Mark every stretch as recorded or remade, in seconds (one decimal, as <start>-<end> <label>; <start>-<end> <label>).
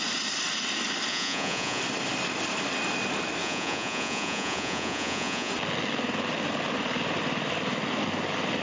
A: 0.0-1.1 recorded; 1.1-1.8 remade; 1.8-3.4 recorded; 3.4-5.5 remade; 5.5-8.6 recorded